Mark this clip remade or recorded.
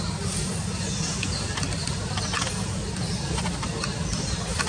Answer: recorded